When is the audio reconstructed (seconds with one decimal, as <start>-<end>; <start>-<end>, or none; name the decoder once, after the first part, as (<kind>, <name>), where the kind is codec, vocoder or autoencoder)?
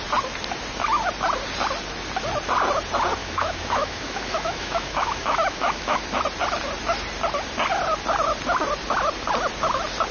3.2-6.0 (autoencoder, DAC-VAE)